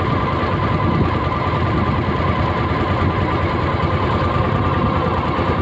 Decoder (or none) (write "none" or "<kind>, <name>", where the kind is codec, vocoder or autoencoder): none